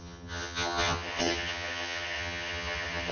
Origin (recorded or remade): remade